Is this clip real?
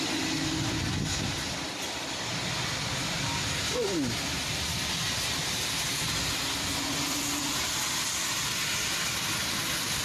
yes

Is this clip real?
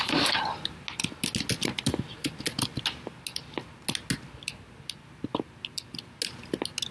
yes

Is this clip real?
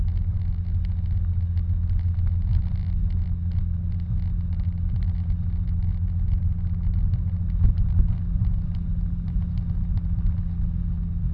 yes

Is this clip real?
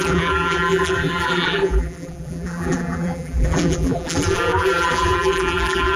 no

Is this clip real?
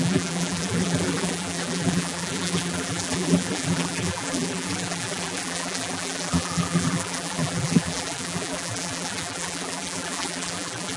no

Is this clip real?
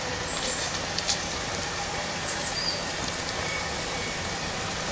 no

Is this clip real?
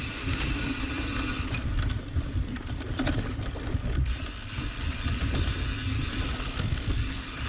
yes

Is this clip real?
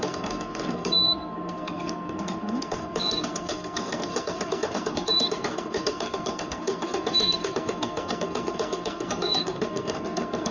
no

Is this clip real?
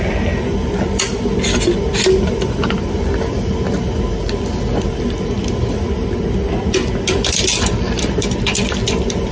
yes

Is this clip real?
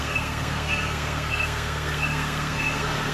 no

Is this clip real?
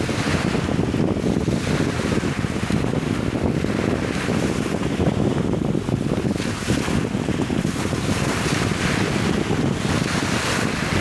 yes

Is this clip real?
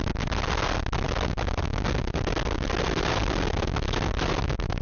yes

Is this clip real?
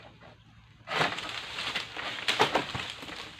yes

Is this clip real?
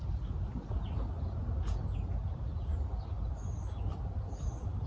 yes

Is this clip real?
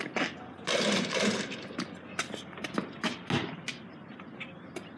yes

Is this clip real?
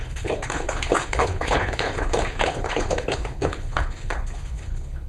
no